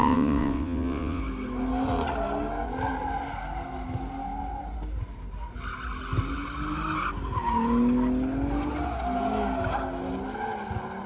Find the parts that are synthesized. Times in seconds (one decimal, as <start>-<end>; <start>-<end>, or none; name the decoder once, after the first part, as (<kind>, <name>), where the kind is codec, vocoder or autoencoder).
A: 0.0-1.2 (vocoder, WaveNeXt)